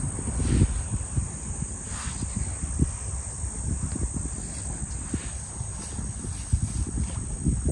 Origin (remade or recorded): recorded